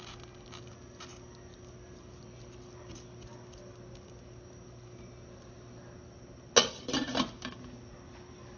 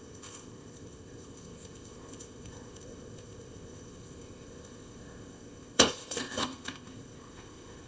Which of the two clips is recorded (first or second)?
first